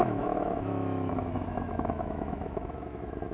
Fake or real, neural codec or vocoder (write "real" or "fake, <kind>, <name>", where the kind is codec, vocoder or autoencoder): fake, autoencoder, DAC-VAE